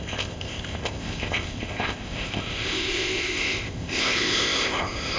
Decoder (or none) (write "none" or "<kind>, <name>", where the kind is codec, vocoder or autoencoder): codec, ZipCodec